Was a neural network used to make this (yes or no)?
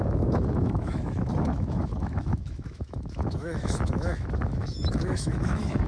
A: yes